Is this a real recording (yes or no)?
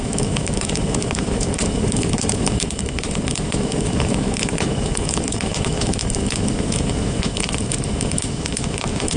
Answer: no